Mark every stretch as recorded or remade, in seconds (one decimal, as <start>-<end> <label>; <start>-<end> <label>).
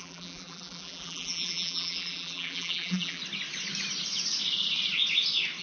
0.0-3.2 remade; 3.2-5.6 recorded